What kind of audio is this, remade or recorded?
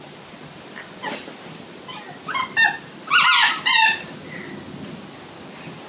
recorded